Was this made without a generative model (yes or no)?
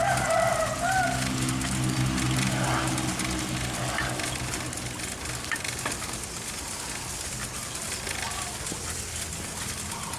yes